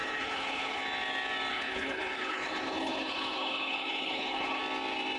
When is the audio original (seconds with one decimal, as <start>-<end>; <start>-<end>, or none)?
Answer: 0.8-1.5; 4.6-5.2